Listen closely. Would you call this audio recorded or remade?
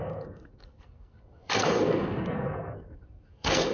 remade